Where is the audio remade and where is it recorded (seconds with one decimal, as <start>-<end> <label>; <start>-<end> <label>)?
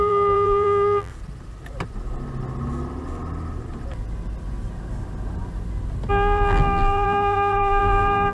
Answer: 0.0-1.1 remade; 1.1-6.1 recorded; 6.1-8.3 remade